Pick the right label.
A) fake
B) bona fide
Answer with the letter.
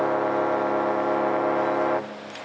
B